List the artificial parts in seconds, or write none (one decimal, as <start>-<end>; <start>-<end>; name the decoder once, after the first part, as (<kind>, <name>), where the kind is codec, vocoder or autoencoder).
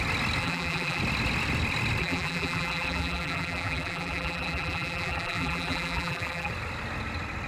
0.4-1.0 (vocoder, BigVGAN v2); 2.0-6.5